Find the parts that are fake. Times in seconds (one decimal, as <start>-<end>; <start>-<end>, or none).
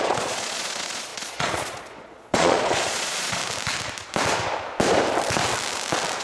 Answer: 0.0-3.4